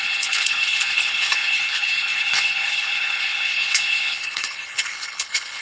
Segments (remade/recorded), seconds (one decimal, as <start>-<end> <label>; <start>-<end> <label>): 0.0-5.6 remade

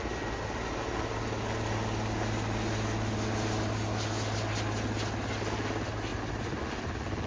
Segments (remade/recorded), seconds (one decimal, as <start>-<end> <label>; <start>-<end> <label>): 0.0-7.3 recorded

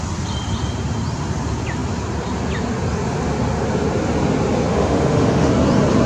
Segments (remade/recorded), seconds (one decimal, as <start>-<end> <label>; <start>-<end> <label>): 0.0-4.7 recorded; 4.7-5.5 remade; 5.5-6.1 recorded

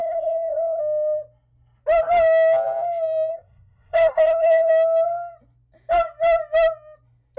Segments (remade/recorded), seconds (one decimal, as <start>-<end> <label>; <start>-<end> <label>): 0.0-0.8 remade; 0.8-3.3 recorded; 3.3-4.7 remade; 4.7-7.4 recorded

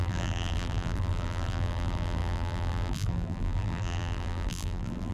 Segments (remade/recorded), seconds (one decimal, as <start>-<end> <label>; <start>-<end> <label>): 0.0-5.1 remade